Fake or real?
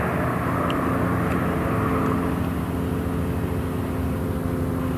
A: real